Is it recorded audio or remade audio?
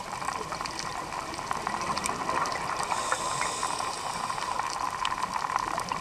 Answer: recorded